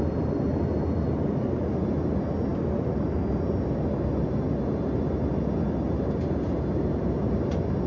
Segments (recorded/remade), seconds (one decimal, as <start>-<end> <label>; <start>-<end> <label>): 0.0-7.9 recorded